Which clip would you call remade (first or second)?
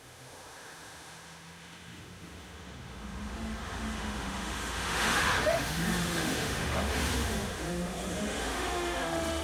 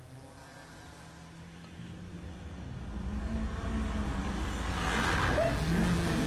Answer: first